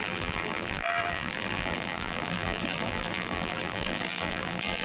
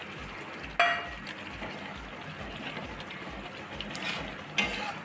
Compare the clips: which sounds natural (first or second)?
second